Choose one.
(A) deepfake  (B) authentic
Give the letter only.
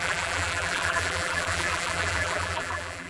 A